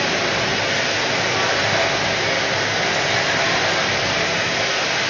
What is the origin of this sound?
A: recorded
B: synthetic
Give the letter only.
A